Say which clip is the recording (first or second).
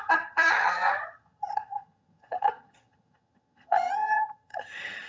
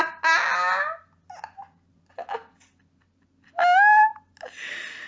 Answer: second